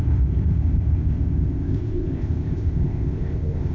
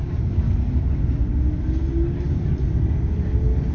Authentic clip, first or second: second